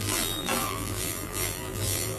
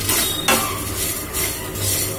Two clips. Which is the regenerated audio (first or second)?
first